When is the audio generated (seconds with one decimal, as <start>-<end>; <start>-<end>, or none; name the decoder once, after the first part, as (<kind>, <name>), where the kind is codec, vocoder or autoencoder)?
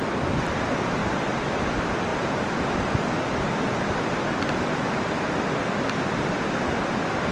none